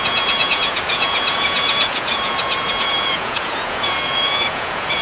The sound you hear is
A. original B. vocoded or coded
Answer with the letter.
B